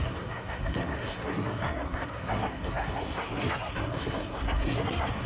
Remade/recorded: remade